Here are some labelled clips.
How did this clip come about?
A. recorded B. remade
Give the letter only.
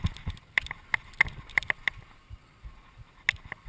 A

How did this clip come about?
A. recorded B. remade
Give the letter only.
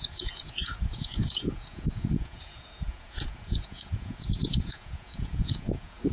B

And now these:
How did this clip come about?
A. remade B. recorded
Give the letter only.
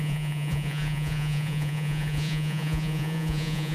A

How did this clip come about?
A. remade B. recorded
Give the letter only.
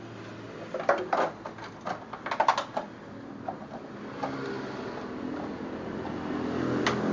B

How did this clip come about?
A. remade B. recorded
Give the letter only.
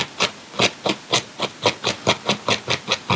B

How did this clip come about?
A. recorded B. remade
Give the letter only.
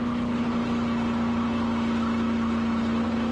A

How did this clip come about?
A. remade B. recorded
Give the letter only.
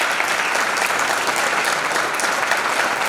B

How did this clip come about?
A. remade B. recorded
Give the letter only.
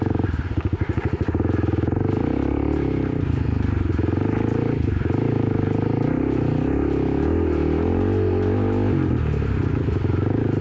B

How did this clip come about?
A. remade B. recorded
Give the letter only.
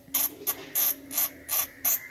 B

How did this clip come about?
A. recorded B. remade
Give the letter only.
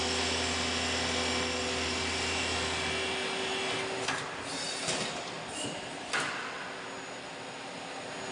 A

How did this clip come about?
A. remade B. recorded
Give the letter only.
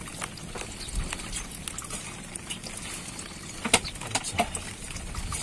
B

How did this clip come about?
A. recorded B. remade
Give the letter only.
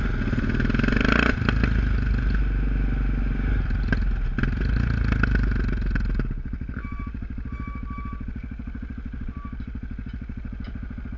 A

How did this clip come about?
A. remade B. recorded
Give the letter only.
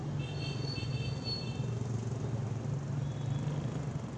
B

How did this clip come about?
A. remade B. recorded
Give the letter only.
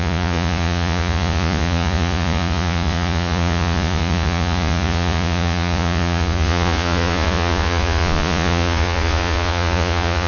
A